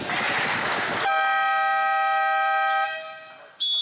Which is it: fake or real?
real